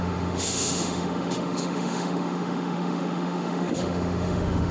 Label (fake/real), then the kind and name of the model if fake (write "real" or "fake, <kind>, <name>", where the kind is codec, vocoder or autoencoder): fake, autoencoder, DAC-VAE